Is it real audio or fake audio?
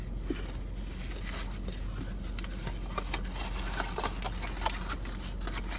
real